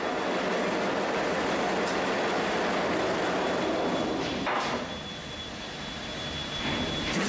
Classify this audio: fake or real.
real